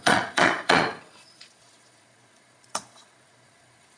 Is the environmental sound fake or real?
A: fake